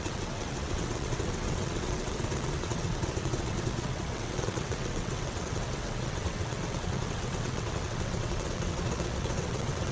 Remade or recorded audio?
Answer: remade